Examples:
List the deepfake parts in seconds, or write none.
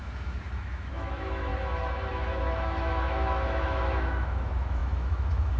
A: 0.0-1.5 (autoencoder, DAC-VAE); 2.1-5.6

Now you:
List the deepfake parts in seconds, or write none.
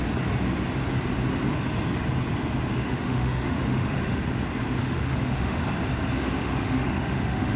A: 2.7-4.2 (autoencoder, DAC-VAE); 4.8-5.6; 6.4-7.6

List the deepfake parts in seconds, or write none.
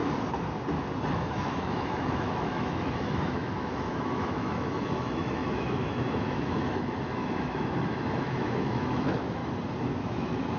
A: 1.1-9.4 (autoencoder, DAC-VAE); 10.0-10.6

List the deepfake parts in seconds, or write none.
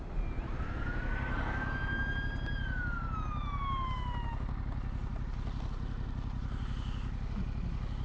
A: none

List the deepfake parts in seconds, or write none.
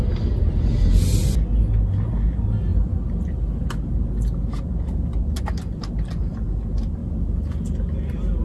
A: none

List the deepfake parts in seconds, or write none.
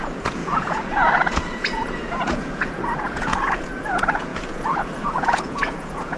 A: 0.0-6.2 (vocoder, Vocos)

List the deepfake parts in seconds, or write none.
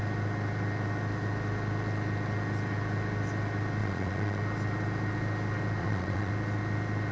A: 3.8-4.4 (vocoder, Vocos); 5.8-6.3